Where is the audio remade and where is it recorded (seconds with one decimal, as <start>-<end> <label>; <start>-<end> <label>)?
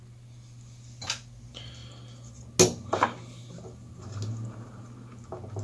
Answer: 0.0-5.6 recorded